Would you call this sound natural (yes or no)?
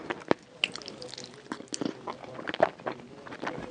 yes